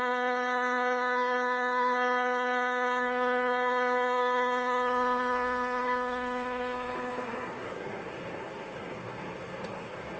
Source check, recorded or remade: remade